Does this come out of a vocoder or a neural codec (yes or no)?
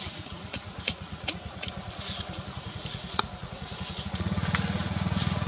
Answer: yes